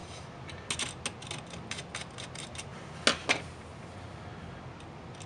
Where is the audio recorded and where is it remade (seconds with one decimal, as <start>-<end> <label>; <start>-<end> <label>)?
0.0-5.3 recorded

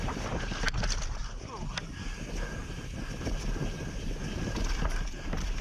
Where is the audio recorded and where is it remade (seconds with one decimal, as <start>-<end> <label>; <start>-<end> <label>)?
0.0-5.6 recorded

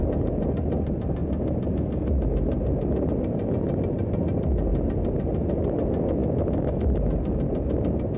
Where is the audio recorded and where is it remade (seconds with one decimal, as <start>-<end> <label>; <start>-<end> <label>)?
0.0-8.2 recorded

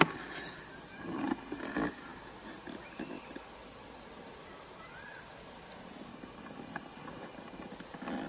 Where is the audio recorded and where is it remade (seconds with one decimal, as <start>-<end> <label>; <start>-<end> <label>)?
0.0-0.9 recorded; 0.9-1.6 remade; 1.6-6.1 recorded; 6.1-7.7 remade; 7.7-8.3 recorded

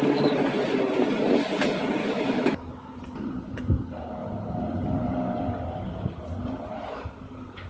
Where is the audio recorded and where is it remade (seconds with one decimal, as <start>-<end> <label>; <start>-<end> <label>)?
0.0-2.0 recorded; 2.0-3.0 remade; 3.0-7.7 recorded

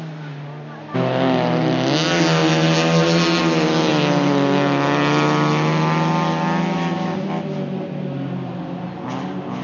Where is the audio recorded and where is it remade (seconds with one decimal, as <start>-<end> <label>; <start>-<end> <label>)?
0.0-9.6 recorded

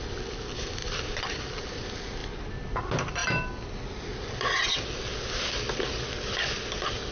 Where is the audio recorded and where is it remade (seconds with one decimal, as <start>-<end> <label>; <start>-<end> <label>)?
0.0-0.8 recorded; 0.8-1.4 remade; 1.4-2.2 recorded; 2.2-2.8 remade; 2.8-7.1 recorded